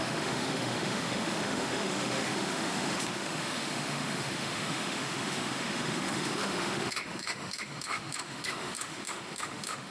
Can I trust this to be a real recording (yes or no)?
no